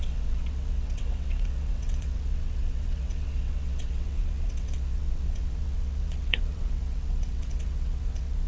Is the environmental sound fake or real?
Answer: fake